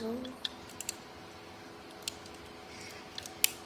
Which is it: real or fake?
real